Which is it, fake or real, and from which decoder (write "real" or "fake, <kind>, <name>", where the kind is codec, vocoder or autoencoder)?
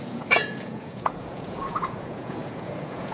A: fake, vocoder, Vocos